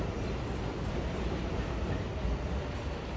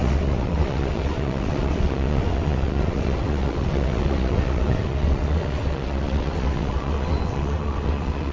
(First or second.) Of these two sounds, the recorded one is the first